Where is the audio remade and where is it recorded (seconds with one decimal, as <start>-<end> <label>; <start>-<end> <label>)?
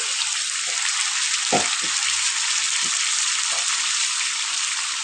0.0-5.0 recorded